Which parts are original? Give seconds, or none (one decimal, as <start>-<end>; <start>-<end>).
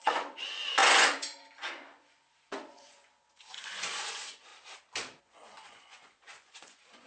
4.5-5.2